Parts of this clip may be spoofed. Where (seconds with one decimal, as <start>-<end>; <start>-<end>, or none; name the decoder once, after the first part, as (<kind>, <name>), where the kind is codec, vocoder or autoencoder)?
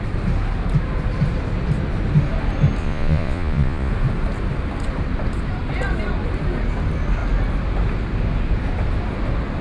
2.8-3.9 (vocoder, Vocos)